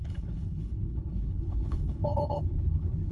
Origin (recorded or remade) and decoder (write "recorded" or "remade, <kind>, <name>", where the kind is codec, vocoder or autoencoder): remade, codec, HILCodec